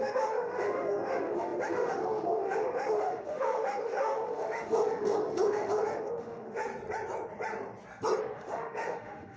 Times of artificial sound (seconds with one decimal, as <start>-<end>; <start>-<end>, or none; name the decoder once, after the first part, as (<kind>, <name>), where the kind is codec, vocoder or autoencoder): 0.0-6.7 (autoencoder, DAC-VAE); 8.2-9.4